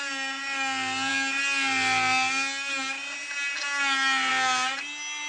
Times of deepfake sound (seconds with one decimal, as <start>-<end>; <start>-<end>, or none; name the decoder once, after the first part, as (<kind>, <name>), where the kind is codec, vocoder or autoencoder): none